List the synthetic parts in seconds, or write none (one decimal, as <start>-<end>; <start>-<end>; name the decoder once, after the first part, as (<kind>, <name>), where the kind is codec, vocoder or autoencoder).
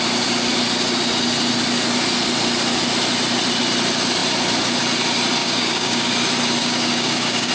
5.4-6.1 (codec, DAC); 6.6-7.5